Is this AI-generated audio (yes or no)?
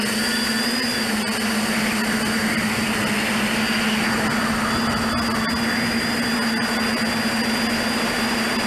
no